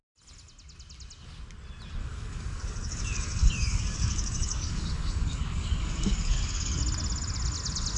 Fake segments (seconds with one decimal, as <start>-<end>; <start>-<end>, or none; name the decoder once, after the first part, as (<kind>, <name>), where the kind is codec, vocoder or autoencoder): 2.0-6.8 (codec, DAC)